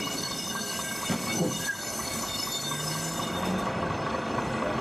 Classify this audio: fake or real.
fake